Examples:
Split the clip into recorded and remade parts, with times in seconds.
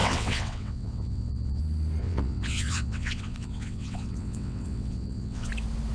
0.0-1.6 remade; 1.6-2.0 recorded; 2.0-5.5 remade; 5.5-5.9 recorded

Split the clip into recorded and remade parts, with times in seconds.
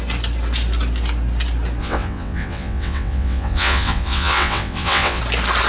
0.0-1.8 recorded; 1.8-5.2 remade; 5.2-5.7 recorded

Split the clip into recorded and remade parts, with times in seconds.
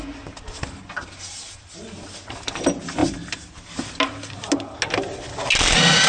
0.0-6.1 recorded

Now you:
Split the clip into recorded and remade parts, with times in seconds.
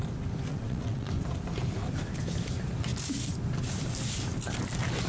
0.0-0.5 recorded; 0.5-1.1 remade; 1.1-5.1 recorded